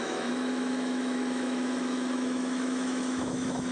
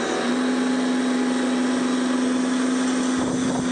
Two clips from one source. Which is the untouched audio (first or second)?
second